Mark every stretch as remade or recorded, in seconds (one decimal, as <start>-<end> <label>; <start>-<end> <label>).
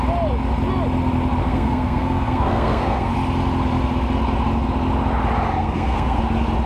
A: 0.0-1.4 recorded; 1.4-3.1 remade; 3.1-5.6 recorded; 5.6-6.2 remade; 6.2-6.7 recorded